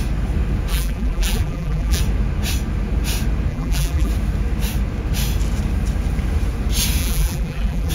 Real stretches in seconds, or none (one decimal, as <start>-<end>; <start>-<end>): 0.0-0.7; 2.0-3.5; 4.1-7.0